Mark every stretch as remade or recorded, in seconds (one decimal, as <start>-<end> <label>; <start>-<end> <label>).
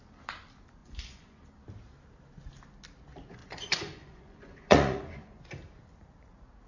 0.0-0.8 recorded; 0.8-1.4 remade; 1.4-3.4 recorded; 3.4-5.4 remade; 5.4-6.7 recorded